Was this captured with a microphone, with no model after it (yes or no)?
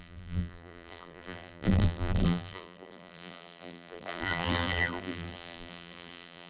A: no